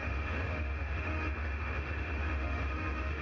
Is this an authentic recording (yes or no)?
no